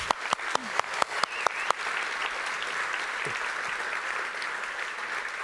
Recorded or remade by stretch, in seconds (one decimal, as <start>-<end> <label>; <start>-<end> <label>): 0.0-0.6 recorded; 0.6-1.2 remade; 1.2-5.4 recorded